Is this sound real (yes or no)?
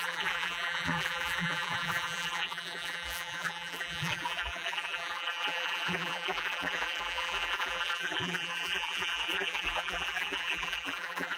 no